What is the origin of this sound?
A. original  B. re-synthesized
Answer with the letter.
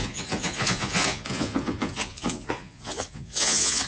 B